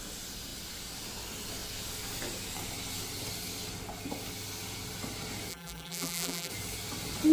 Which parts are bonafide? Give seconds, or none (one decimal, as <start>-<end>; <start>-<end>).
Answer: 0.0-5.5; 6.5-7.3